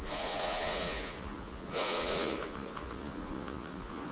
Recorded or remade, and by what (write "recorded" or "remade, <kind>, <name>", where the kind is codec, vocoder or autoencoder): remade, vocoder, Vocos